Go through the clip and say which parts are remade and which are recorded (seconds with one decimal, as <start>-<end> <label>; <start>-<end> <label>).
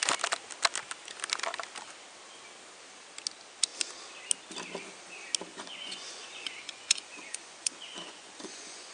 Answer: 0.0-5.5 recorded; 5.5-8.9 remade